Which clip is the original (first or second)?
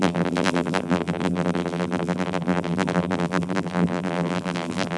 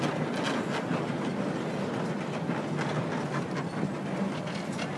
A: second